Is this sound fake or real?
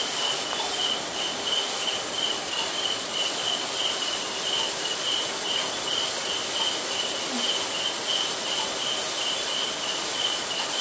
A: real